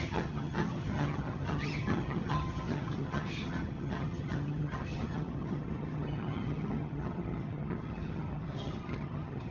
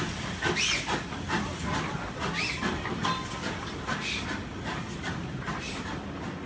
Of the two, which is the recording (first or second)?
second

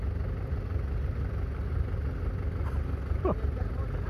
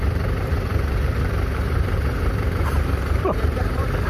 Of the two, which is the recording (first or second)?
first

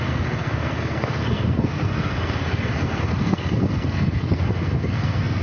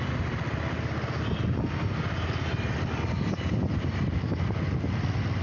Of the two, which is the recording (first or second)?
second